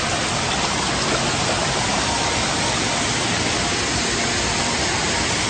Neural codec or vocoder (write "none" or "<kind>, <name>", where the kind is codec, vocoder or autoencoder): none